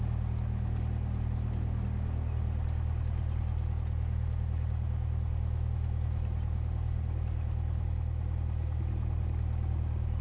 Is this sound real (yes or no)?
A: yes